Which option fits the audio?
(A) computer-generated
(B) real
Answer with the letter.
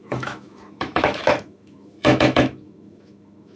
A